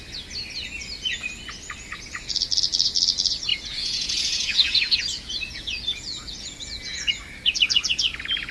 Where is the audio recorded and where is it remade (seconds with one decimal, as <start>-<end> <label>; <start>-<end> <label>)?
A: 0.0-3.5 recorded; 3.5-7.2 remade; 7.2-8.5 recorded